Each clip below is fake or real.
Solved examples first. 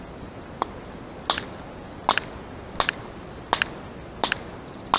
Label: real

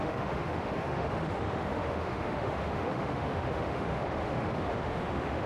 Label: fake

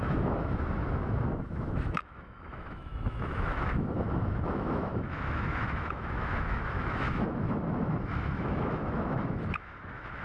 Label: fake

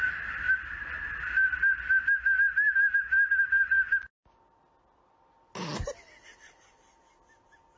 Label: real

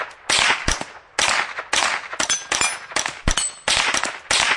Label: real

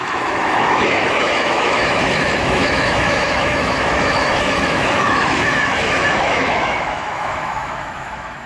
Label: fake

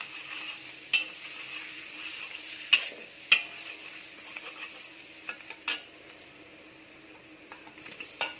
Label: real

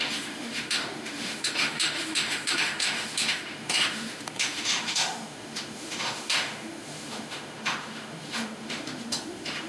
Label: fake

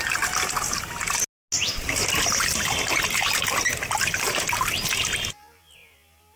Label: real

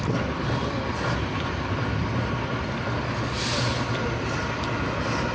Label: real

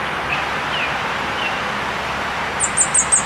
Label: real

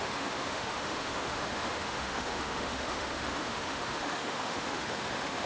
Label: fake